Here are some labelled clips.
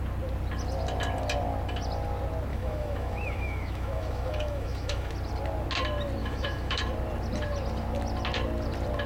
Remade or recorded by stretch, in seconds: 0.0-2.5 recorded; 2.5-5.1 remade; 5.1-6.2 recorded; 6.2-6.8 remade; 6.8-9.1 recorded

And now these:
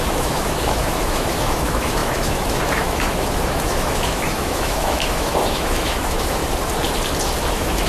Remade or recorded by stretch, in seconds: 0.0-6.4 remade; 6.4-7.5 recorded; 7.5-7.9 remade

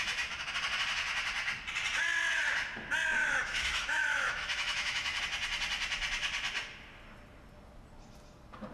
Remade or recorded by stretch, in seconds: 0.0-3.2 recorded; 3.2-5.2 remade; 5.2-8.7 recorded

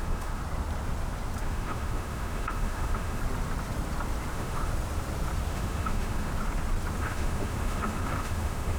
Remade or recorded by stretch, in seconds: 0.0-0.4 remade; 0.4-1.4 recorded; 1.4-3.2 remade; 3.2-4.3 recorded; 4.3-4.7 remade; 4.7-5.5 recorded; 5.5-6.3 remade; 6.3-7.0 recorded; 7.0-8.8 remade

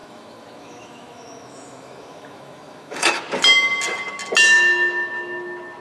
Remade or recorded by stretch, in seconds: 0.0-3.2 remade; 3.2-5.8 recorded

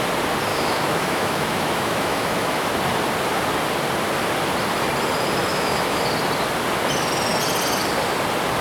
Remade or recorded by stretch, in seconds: 0.0-0.5 recorded; 0.5-2.7 remade; 2.7-5.5 recorded; 5.5-6.0 remade; 6.0-8.6 recorded

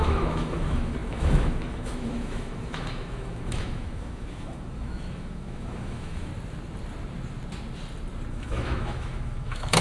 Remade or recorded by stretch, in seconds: 0.0-6.3 remade; 6.3-8.3 recorded; 8.3-9.8 remade